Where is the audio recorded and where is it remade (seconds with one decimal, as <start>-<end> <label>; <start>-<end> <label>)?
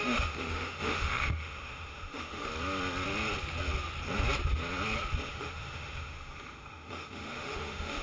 0.0-2.5 remade; 2.5-5.3 recorded; 5.3-8.0 remade